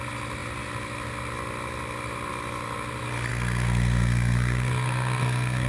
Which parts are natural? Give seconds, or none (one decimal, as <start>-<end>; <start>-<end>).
0.0-3.3